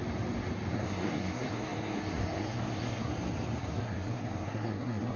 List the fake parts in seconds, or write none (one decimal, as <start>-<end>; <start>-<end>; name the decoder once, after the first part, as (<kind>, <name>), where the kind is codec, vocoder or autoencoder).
0.7-3.1 (codec, SNAC); 3.6-5.2